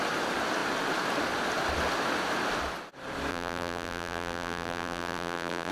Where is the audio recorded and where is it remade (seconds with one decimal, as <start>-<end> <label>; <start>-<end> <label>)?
0.0-3.3 recorded; 3.3-5.7 remade